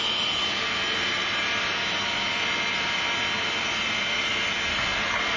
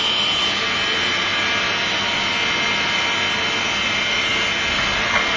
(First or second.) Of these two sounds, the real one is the second